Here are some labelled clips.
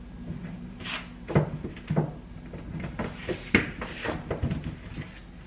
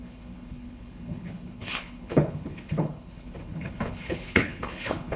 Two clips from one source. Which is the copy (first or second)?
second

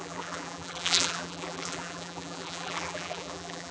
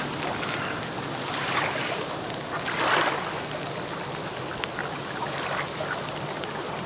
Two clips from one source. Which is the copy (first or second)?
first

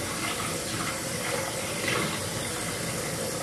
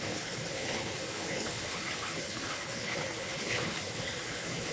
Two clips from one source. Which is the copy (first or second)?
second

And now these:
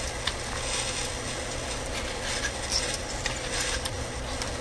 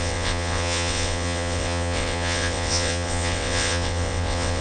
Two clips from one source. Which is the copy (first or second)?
second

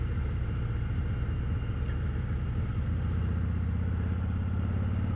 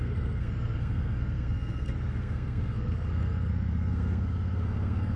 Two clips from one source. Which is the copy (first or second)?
second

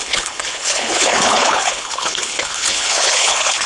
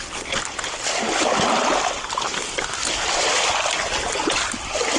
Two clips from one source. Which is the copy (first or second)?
first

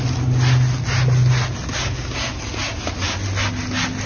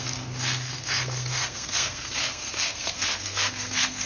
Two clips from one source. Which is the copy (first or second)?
second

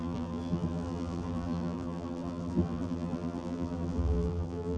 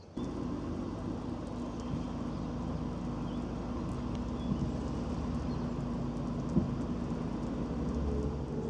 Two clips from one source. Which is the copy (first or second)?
first